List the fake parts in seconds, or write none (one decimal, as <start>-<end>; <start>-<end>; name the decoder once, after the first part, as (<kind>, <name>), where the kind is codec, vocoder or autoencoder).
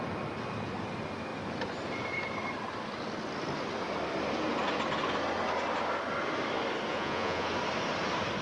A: 6.9-7.5 (vocoder, Vocos)